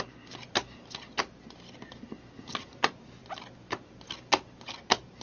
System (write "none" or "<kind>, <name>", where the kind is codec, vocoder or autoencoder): none